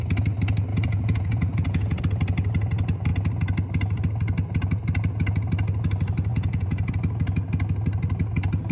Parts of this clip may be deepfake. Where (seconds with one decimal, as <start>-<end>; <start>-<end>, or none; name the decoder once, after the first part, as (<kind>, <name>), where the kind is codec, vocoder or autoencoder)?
0.7-2.0 (vocoder, Vocos); 6.3-6.9